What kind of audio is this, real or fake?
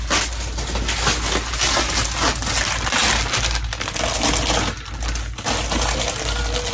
real